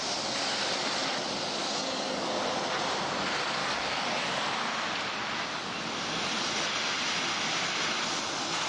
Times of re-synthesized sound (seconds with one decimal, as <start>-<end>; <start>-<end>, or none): 1.6-2.3; 3.6-4.4